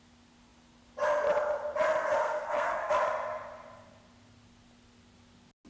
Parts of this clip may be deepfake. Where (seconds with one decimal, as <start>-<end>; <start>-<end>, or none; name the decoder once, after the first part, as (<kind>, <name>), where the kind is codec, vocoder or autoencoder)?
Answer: 2.2-2.9 (codec, SNAC)